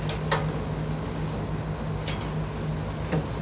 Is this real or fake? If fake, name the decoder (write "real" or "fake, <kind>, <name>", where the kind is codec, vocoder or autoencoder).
real